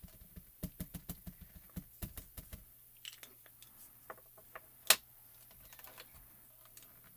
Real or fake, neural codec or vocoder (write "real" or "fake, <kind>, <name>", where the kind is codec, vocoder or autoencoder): real